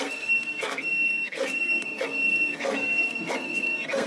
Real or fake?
fake